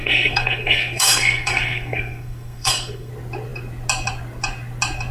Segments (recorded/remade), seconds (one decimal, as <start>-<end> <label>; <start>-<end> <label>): 0.0-3.1 remade; 3.1-5.1 recorded